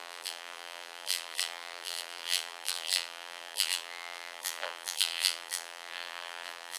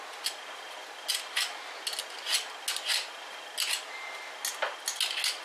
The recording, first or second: second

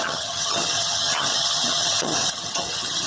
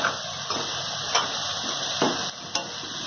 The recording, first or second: second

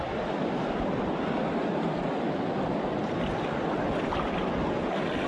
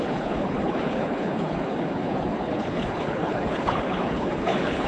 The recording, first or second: first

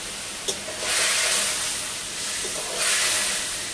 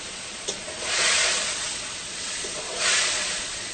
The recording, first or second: first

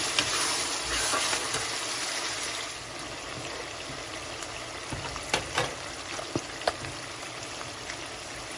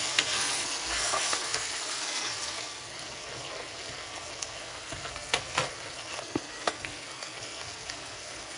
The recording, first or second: first